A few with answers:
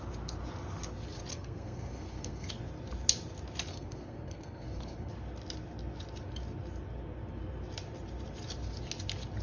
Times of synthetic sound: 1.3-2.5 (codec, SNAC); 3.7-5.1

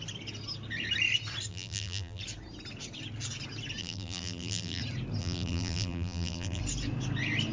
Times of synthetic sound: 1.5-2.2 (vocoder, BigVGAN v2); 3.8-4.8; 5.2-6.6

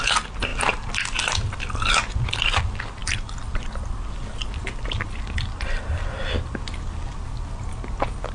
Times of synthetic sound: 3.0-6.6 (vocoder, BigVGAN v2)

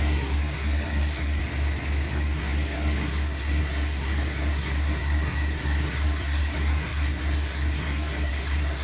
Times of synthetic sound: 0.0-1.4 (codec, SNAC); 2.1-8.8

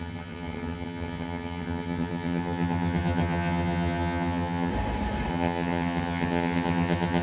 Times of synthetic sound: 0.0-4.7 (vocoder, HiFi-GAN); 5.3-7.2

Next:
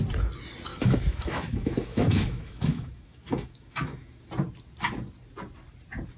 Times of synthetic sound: 0.7-4.2 (autoencoder, DAC-VAE)

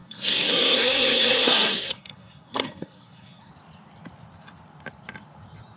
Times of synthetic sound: 0.0-3.5 (codec, SNAC)

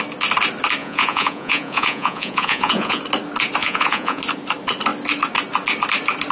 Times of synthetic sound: 0.8-3.0 (vocoder, Vocos); 3.6-4.2